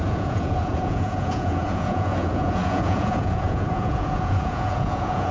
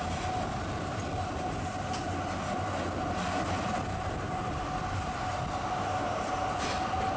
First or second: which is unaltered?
second